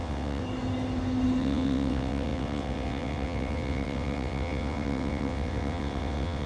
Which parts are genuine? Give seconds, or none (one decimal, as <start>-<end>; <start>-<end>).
0.4-1.4